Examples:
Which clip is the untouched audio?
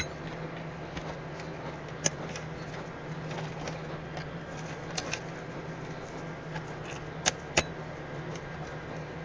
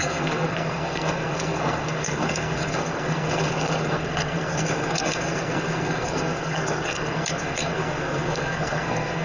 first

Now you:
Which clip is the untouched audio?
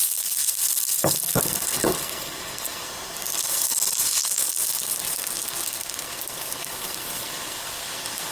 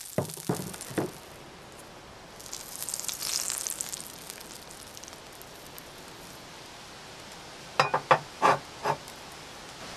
second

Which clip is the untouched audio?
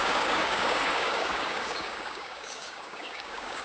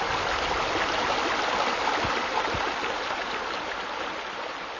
second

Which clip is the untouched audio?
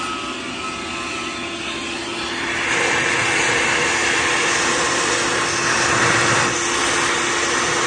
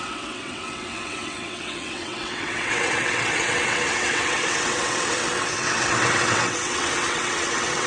first